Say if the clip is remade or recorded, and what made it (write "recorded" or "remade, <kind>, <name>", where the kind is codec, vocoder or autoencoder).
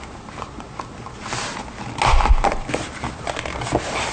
recorded